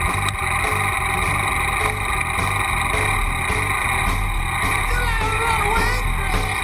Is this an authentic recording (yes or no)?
yes